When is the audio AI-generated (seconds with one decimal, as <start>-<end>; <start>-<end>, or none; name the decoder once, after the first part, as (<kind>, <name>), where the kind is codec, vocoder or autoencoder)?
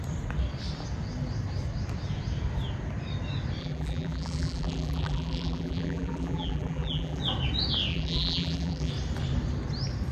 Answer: 3.6-7.2 (vocoder, BigVGAN v2); 7.9-8.9